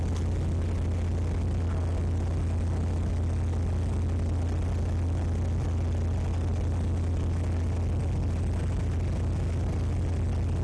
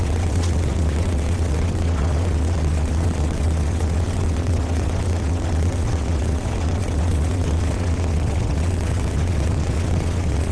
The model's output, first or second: second